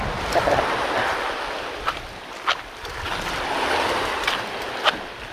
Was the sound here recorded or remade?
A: recorded